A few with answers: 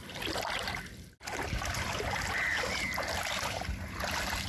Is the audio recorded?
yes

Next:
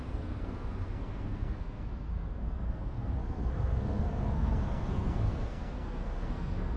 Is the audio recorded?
no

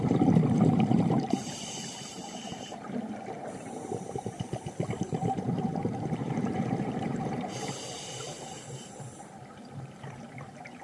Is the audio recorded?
no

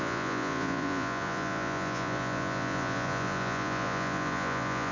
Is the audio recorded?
no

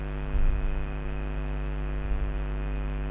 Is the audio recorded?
yes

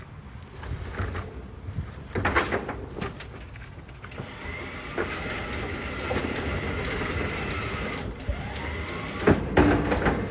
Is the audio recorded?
yes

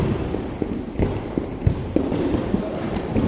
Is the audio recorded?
no